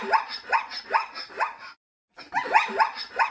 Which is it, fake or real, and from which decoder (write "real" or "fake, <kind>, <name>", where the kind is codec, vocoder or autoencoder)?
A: real